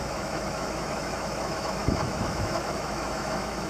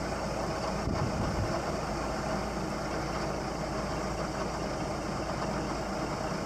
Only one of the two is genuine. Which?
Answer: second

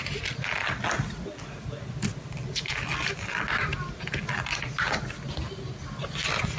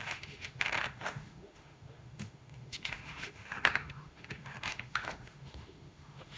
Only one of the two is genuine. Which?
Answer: first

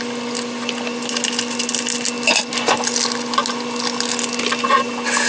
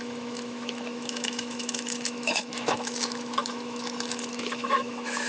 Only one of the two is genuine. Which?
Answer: first